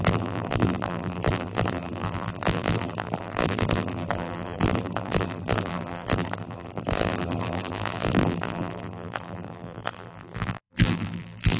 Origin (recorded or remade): remade